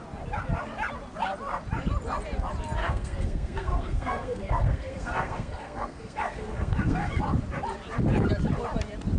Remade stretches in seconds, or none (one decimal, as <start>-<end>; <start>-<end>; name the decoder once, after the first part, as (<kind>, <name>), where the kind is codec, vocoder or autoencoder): 2.8-7.2 (codec, SNAC)